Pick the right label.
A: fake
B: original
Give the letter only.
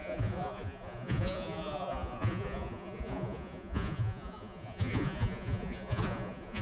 A